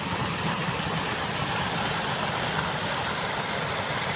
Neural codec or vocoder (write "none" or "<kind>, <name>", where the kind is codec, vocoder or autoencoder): vocoder, BigVGAN v2